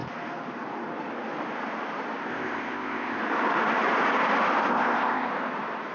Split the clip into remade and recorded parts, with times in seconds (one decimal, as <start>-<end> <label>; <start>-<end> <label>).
0.0-2.3 recorded; 2.3-3.2 remade; 3.2-4.7 recorded; 4.7-5.3 remade; 5.3-5.9 recorded